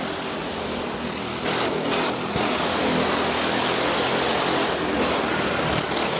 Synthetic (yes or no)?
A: no